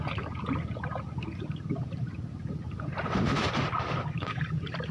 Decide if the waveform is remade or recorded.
remade